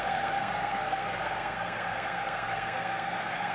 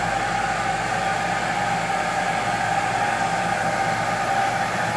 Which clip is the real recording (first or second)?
second